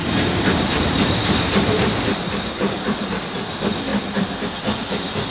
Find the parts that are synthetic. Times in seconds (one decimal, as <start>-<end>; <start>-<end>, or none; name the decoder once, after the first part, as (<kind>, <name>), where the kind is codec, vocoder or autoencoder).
0.0-3.2 (vocoder, BigVGAN v2); 3.9-4.5